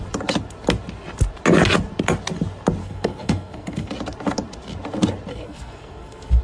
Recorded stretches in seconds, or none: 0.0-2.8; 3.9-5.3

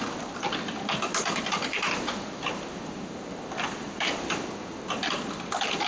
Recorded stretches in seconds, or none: 0.0-1.1; 4.5-5.9

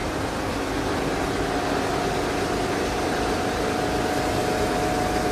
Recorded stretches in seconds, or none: 0.0-5.3

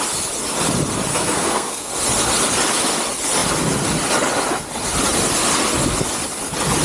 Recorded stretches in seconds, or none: 0.0-1.1; 1.9-6.8

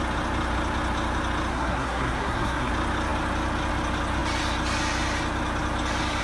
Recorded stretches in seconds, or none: 0.0-1.5; 2.7-6.2

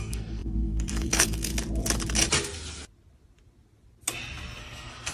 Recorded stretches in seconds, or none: 1.5-4.6

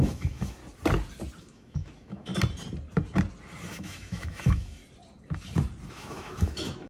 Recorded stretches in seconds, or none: 0.6-1.4; 2.3-3.7; 4.8-5.9

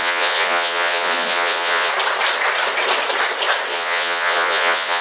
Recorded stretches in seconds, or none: 1.9-3.7